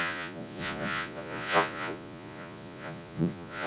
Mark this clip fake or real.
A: fake